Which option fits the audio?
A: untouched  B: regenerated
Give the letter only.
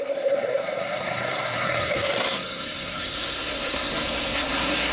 B